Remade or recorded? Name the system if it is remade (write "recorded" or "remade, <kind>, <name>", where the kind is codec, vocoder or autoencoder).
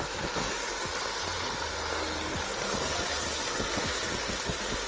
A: recorded